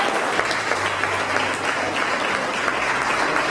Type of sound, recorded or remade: recorded